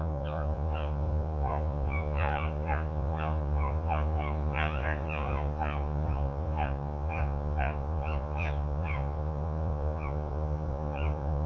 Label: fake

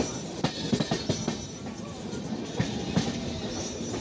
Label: real